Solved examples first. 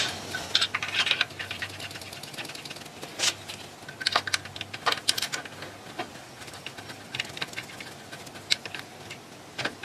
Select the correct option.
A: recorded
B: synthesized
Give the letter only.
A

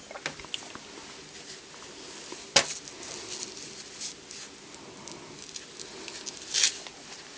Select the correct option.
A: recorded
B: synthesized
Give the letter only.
A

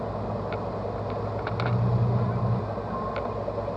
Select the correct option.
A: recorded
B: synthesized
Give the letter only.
A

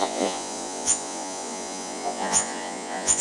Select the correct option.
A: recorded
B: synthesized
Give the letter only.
B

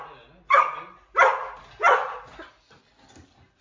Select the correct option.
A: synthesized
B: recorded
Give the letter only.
B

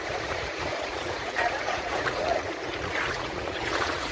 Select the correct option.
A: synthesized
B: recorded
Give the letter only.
A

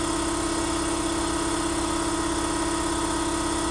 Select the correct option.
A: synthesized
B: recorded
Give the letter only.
B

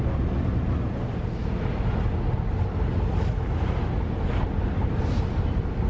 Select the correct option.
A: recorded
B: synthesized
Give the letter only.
A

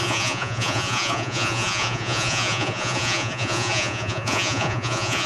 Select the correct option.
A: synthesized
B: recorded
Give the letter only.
A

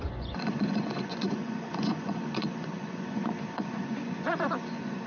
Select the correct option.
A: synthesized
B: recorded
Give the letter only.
A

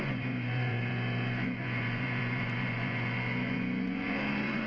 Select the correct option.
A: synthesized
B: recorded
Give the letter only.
A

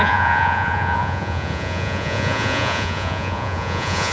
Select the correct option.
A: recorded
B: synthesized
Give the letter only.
B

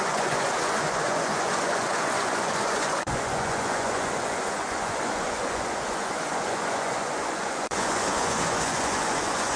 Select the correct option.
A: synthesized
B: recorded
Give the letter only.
A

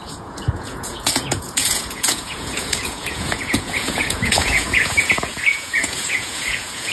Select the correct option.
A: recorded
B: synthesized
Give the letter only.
B